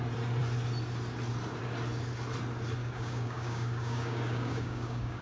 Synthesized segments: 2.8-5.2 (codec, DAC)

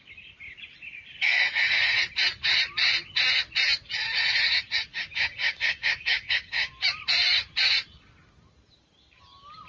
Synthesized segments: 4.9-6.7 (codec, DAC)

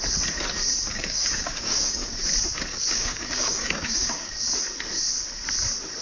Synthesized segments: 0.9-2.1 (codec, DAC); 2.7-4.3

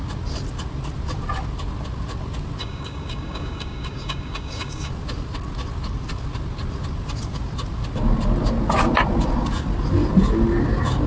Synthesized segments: 2.6-4.9 (codec, DAC)

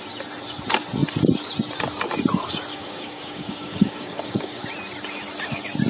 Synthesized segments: 2.7-4.6 (codec, DAC)